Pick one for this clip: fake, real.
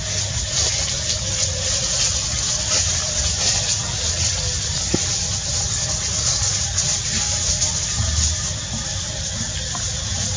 real